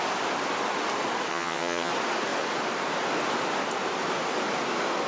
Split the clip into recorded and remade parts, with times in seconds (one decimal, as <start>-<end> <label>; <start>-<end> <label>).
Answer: 0.0-1.3 recorded; 1.3-1.9 remade; 1.9-5.1 recorded

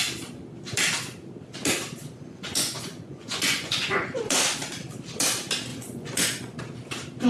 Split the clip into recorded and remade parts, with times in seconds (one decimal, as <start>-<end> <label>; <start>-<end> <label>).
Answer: 0.0-2.0 recorded; 2.0-4.2 remade; 4.2-5.7 recorded; 5.7-6.6 remade; 6.6-7.3 recorded

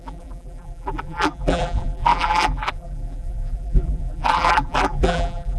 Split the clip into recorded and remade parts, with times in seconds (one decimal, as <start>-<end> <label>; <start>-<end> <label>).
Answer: 0.0-5.6 remade

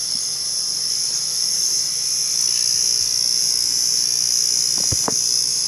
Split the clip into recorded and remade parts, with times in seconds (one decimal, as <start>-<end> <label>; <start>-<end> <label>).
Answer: 0.0-5.7 recorded

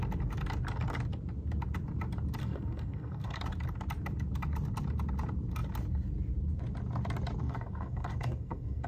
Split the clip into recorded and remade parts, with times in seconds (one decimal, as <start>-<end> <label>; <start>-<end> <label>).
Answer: 0.0-2.4 recorded; 2.4-3.4 remade; 3.4-7.4 recorded; 7.4-8.9 remade

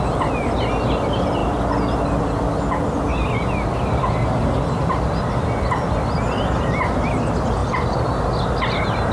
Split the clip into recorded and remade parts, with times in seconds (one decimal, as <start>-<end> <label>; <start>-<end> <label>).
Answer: 0.0-9.1 recorded

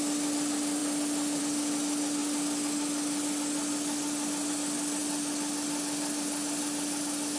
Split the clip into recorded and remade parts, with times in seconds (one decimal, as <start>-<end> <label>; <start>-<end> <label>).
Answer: 0.0-7.4 recorded